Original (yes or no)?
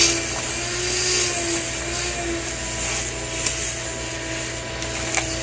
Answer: yes